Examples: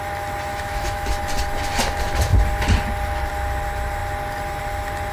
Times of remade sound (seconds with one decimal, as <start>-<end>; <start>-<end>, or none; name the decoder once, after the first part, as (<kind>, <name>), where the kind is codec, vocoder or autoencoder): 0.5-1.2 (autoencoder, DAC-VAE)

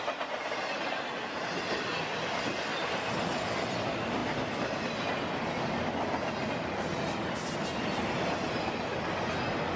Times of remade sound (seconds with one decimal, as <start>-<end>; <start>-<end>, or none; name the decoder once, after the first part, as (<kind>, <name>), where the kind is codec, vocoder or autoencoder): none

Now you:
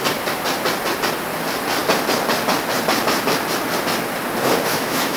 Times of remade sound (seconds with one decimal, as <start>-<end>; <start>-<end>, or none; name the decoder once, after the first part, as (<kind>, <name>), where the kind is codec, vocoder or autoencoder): 4.7-5.2 (autoencoder, DAC-VAE)

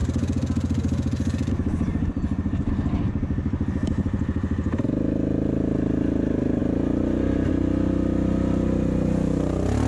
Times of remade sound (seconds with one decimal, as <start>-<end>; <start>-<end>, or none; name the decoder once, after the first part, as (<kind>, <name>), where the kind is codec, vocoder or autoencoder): none

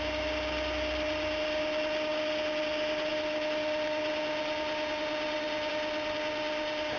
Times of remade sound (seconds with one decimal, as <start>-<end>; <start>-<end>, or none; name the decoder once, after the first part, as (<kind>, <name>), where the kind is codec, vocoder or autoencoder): none